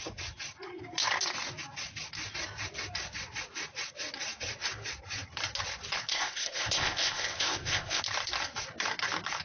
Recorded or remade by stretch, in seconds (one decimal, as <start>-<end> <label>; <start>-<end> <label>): 0.0-6.1 recorded; 6.1-8.0 remade; 8.0-9.4 recorded